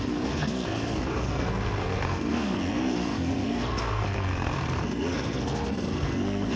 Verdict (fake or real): fake